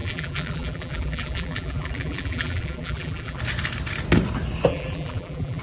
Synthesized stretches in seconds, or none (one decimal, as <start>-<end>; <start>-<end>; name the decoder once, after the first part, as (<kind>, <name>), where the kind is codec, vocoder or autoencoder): 0.0-3.4 (vocoder, BigVGAN v2); 4.7-5.6